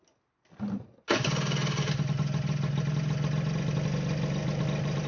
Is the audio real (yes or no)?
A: yes